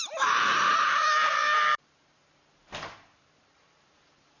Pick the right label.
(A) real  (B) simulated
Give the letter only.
B